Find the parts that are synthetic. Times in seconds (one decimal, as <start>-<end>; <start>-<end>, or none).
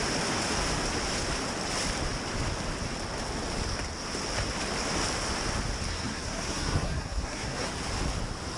5.9-7.7